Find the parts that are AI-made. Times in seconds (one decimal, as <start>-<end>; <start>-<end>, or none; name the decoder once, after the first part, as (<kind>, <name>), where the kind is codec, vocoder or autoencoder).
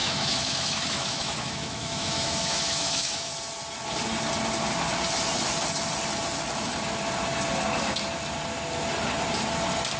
0.0-3.3 (autoencoder, DAC-VAE)